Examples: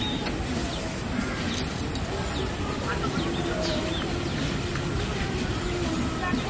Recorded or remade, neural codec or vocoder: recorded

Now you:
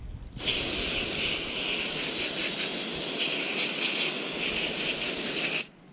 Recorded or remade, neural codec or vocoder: recorded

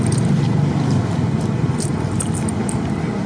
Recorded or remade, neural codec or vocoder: recorded